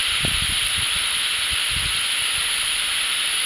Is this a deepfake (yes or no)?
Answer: no